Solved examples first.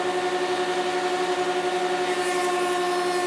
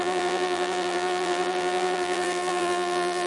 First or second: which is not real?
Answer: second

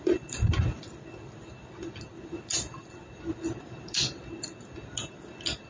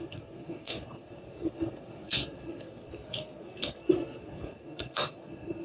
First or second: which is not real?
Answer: second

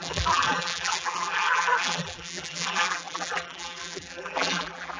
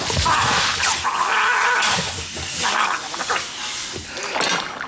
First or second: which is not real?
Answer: first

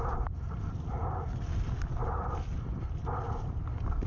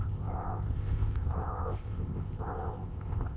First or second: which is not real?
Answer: second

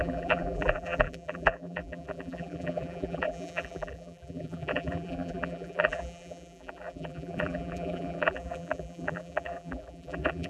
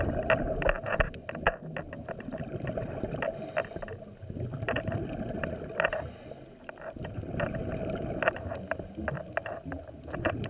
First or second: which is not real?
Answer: first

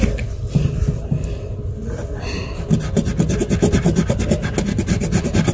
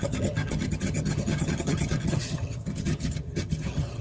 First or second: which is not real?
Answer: second